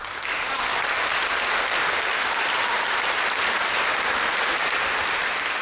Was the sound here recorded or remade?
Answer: recorded